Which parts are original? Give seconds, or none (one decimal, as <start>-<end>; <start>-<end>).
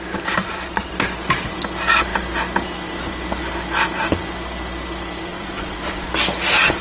0.0-0.4; 0.9-5.3; 6.1-6.8